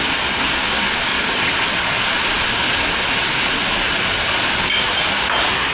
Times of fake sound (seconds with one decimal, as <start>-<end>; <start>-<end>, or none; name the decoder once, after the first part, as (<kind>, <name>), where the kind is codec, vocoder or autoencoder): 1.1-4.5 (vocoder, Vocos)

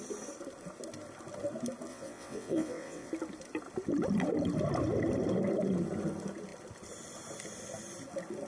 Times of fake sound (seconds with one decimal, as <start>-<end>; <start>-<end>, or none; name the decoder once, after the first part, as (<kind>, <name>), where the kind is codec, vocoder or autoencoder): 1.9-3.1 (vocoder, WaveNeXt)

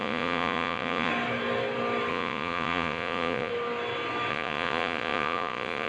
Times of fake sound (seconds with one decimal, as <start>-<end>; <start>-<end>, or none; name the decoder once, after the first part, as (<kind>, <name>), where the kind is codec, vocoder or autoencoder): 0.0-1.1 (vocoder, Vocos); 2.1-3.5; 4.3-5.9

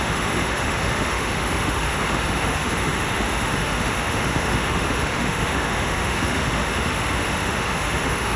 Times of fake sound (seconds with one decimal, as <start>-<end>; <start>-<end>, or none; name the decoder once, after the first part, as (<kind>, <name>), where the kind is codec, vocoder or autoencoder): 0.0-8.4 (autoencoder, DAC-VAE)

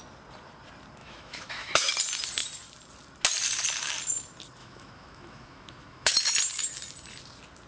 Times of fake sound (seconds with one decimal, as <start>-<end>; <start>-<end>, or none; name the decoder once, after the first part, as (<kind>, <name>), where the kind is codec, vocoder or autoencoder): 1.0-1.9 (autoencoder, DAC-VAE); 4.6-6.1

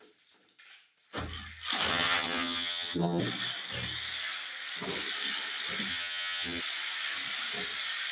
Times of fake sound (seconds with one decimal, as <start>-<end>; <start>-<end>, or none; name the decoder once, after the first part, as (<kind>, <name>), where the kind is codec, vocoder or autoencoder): 1.9-3.2 (vocoder, HiFi-GAN); 5.9-6.6

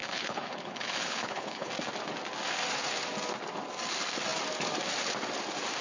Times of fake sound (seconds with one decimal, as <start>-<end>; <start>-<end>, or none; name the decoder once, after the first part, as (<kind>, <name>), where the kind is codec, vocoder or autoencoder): 0.0-1.7 (codec, HILCodec)

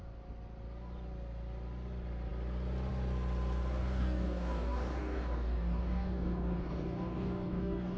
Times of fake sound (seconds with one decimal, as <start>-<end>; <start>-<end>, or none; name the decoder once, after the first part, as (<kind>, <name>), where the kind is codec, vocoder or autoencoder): 3.8-8.0 (codec, DAC)